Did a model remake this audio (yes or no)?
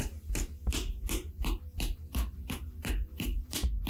yes